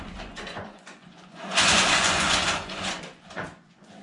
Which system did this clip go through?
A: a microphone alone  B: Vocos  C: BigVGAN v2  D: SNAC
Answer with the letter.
B